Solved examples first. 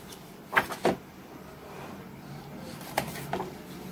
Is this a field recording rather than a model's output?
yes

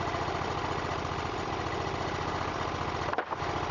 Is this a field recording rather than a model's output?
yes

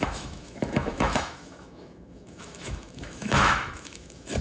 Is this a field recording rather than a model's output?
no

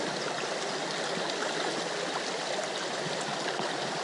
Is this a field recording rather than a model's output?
yes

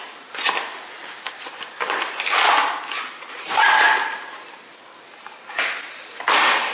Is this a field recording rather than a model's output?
yes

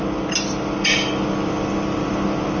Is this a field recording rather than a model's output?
yes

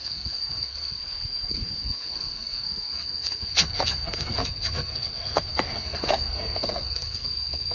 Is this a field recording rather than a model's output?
no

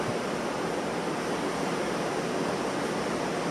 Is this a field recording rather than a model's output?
yes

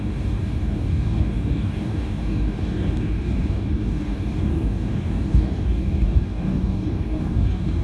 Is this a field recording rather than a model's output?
no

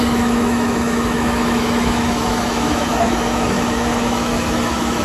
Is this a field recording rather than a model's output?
no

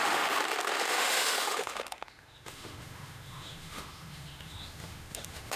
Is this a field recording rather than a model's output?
no